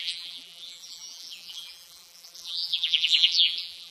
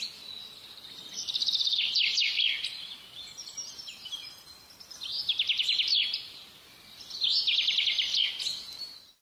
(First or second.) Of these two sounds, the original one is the second